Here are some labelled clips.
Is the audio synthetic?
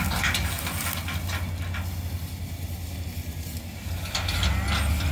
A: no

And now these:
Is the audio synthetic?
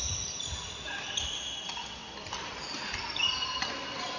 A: no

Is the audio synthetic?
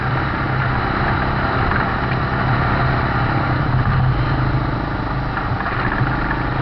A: no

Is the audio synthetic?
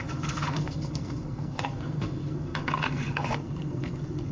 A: yes